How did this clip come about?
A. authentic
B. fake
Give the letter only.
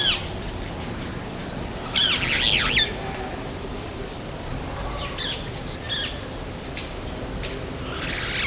A